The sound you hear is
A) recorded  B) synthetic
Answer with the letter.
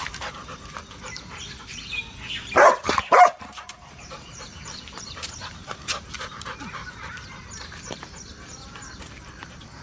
B